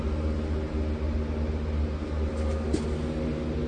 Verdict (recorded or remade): recorded